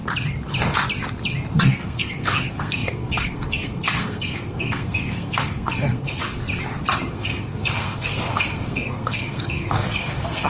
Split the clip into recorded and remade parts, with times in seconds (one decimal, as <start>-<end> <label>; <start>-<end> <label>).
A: 0.0-1.6 recorded; 1.6-6.2 remade; 6.2-7.1 recorded; 7.1-10.5 remade